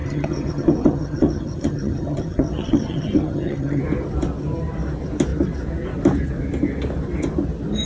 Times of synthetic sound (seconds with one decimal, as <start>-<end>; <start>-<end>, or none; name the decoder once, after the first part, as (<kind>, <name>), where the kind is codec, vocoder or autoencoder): 0.0-3.8 (vocoder, HiFi-GAN)